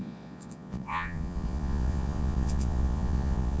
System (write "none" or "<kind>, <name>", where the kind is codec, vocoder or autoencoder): vocoder, Vocos